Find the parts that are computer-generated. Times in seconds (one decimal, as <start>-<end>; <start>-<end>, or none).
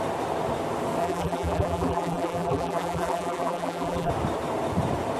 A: 1.0-4.1